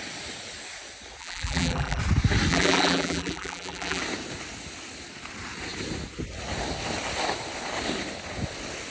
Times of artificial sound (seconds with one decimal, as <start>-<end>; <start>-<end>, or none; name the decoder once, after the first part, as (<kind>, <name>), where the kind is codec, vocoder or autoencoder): 1.2-2.0 (vocoder, BigVGAN v2); 2.5-4.0